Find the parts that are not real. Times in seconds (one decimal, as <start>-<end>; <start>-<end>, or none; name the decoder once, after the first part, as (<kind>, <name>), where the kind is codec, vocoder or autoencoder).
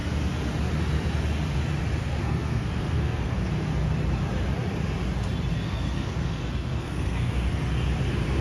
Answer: 2.0-3.5 (codec, SNAC); 5.5-7.5